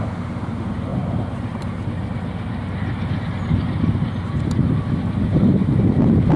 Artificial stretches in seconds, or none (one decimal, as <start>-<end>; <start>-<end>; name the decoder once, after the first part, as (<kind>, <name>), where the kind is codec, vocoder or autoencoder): none